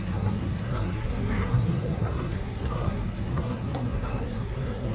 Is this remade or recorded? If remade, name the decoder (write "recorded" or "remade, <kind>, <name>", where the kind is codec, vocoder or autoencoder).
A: remade, codec, SNAC